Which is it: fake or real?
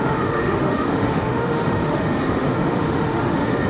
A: fake